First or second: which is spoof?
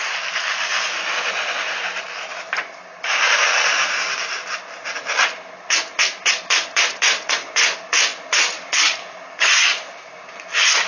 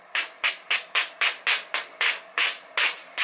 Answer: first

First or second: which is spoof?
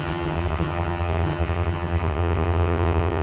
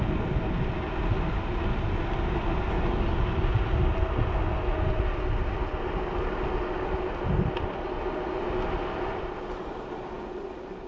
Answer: first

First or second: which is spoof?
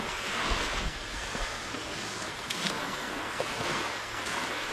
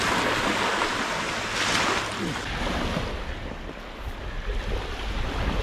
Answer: first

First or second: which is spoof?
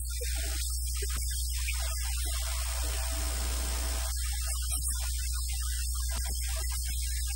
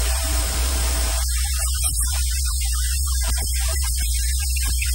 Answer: second